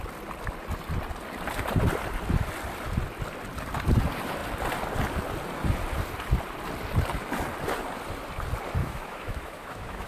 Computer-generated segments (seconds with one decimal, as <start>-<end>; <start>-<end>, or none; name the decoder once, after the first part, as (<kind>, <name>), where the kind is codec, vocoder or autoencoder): 8.8-10.1 (autoencoder, DAC-VAE)